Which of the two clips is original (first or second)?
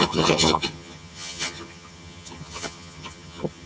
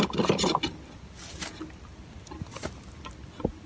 second